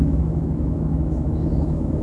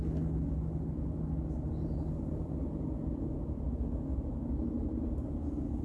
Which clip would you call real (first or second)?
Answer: second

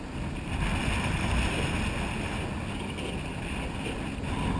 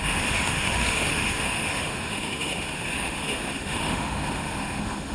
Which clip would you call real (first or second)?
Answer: first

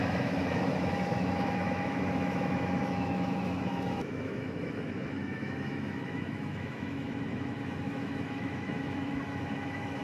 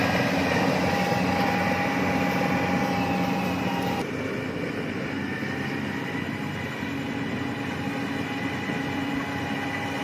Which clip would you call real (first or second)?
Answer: second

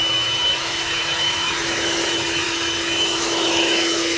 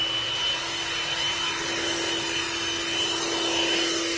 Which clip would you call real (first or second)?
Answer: second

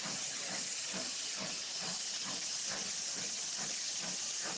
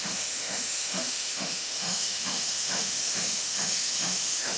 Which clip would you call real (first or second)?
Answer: first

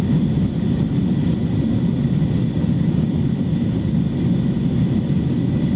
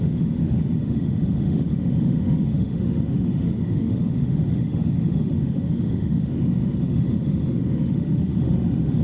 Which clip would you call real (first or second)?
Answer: first